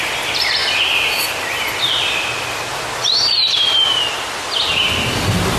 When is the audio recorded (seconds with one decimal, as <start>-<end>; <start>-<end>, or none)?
0.0-5.6